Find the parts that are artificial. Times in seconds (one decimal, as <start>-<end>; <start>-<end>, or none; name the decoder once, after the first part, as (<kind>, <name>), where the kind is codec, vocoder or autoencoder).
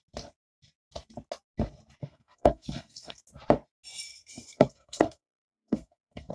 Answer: 2.0-3.2 (codec, SNAC); 4.1-6.3